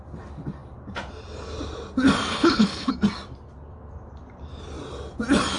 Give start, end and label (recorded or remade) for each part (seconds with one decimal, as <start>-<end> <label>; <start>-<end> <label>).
0.0-2.3 recorded; 2.3-2.9 remade; 2.9-5.6 recorded